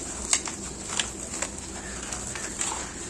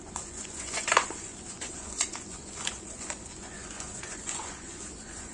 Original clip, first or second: first